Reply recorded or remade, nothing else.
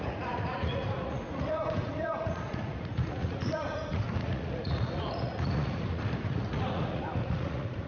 remade